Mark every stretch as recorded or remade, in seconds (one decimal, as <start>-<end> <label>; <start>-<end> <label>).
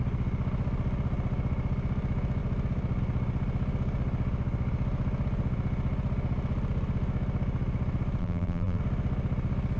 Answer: 0.0-8.2 recorded; 8.2-8.8 remade; 8.8-9.8 recorded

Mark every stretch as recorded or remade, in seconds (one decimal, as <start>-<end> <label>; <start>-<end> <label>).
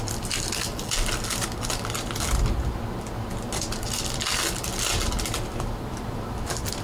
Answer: 0.0-5.5 recorded; 5.5-6.8 remade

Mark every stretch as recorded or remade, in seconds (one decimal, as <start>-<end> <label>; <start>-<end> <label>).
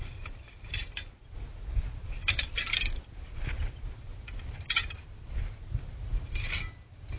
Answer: 0.0-0.7 recorded; 0.7-4.8 remade; 4.8-7.2 recorded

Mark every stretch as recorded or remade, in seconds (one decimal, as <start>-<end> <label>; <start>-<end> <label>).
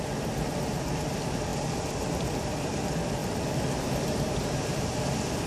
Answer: 0.0-1.5 recorded; 1.5-2.7 remade; 2.7-3.2 recorded; 3.2-5.5 remade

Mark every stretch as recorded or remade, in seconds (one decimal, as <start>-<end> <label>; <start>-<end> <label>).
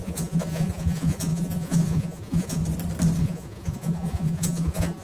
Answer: 0.0-2.6 remade; 2.6-3.2 recorded; 3.2-5.0 remade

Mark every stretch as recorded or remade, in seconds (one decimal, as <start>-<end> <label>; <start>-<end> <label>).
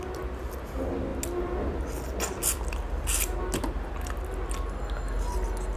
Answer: 0.0-5.8 recorded